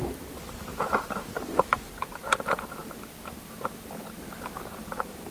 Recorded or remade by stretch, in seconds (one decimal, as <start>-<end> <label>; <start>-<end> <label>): 0.0-0.7 remade; 0.7-1.6 recorded; 1.6-2.8 remade; 2.8-3.6 recorded; 3.6-5.3 remade

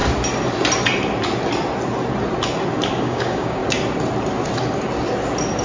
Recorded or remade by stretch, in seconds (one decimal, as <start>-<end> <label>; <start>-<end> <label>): 0.0-3.0 recorded; 3.0-3.6 remade; 3.6-5.6 recorded

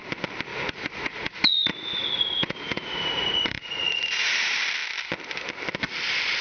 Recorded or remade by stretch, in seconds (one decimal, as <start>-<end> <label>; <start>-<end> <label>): 0.0-0.5 recorded; 0.5-4.3 remade; 4.3-6.4 recorded

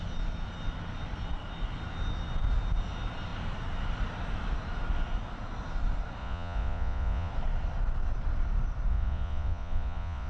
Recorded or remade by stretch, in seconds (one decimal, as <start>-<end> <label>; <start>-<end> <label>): 0.0-6.2 recorded; 6.2-7.3 remade; 7.3-8.9 recorded; 8.9-10.3 remade

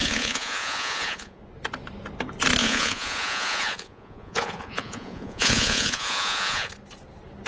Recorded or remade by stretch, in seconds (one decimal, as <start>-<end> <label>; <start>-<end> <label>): 0.0-1.4 remade; 1.4-2.6 recorded; 2.6-6.7 remade; 6.7-7.5 recorded

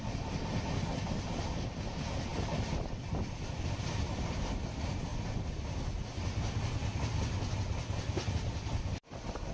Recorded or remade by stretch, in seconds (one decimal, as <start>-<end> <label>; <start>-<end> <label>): 0.0-9.5 recorded

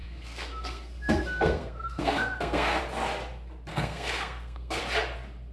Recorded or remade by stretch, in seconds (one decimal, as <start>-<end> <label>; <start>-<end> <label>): 0.0-2.8 remade; 2.8-3.7 recorded; 3.7-4.8 remade; 4.8-5.5 recorded

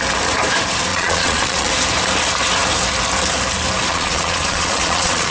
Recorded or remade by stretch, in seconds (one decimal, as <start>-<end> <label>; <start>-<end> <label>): 0.0-0.9 recorded; 0.9-1.7 remade; 1.7-3.9 recorded; 3.9-5.3 remade